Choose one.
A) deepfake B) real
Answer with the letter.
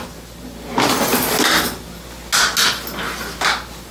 B